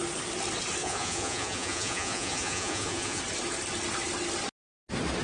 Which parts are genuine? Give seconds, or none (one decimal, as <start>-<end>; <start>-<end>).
0.0-0.8; 3.2-5.2